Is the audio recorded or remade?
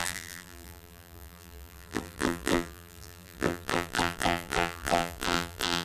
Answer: remade